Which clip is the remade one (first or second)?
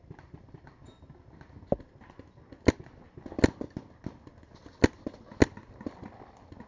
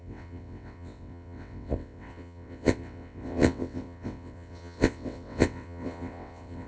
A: second